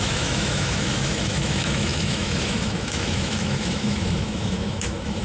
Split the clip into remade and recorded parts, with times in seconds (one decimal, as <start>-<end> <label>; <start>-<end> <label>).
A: 0.0-5.2 remade